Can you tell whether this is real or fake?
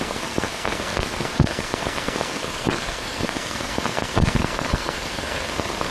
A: fake